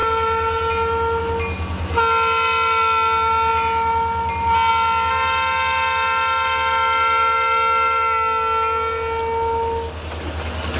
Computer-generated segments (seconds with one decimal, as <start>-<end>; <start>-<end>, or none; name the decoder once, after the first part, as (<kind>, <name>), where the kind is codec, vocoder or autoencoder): none